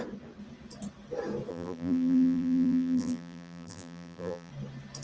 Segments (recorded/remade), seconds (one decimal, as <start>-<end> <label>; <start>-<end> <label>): 0.0-1.5 recorded; 1.5-4.5 remade; 4.5-5.0 recorded